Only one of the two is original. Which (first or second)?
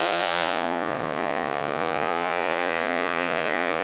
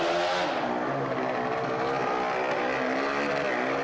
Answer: second